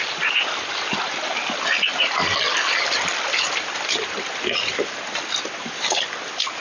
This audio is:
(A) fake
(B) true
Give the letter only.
B